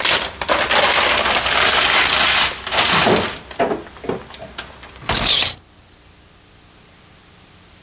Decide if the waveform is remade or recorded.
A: recorded